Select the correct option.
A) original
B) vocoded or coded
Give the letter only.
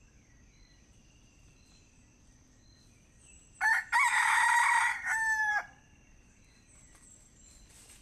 B